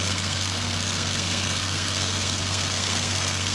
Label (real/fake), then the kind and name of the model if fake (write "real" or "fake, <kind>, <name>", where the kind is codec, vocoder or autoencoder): fake, codec, SNAC